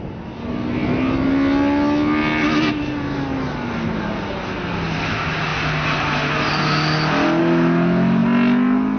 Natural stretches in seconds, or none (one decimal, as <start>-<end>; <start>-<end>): 0.0-9.0